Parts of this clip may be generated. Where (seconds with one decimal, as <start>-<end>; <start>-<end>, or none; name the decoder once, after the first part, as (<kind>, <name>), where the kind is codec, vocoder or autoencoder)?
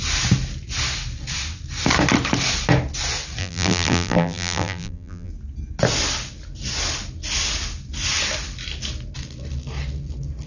3.4-5.3 (vocoder, BigVGAN v2)